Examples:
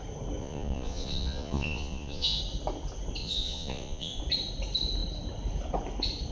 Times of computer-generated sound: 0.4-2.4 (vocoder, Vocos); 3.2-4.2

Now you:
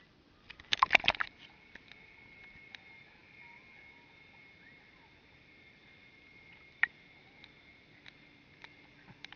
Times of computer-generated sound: 0.0-3.2 (vocoder, BigVGAN v2); 4.4-9.4

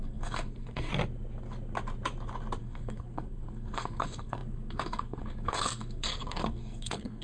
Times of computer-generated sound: 0.0-0.9 (codec, SNAC); 2.6-7.2

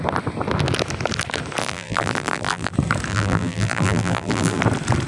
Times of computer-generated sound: 1.6-2.7 (vocoder, BigVGAN v2); 3.1-4.6

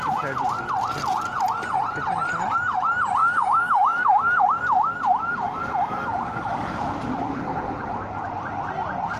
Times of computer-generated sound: 3.2-4.4 (codec, DAC); 6.1-6.9

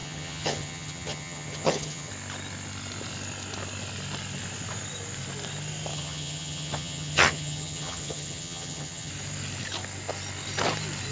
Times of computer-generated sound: 0.0-2.1 (vocoder, HiFi-GAN); 5.9-9.1

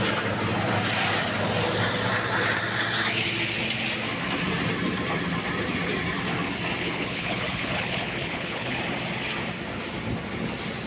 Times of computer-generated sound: 6.8-8.8 (codec, HILCodec)